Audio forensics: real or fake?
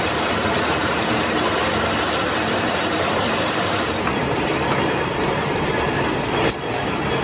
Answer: fake